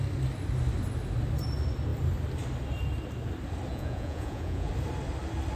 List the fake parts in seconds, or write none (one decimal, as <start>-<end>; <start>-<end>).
3.7-4.7